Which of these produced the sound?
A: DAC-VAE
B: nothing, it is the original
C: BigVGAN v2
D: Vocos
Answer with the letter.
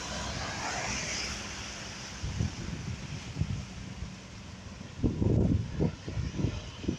B